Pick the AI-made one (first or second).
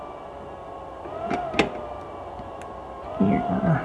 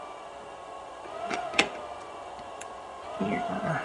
second